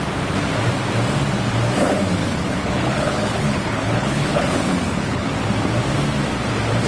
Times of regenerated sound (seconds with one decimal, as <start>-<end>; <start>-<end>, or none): 2.2-5.3

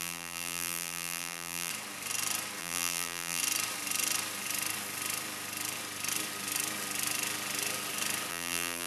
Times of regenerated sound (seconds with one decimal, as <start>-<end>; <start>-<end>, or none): 0.0-1.7; 2.6-3.4; 8.3-8.9

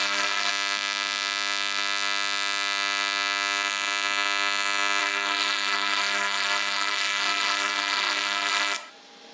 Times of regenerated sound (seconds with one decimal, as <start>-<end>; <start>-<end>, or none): 0.0-0.5; 5.0-8.9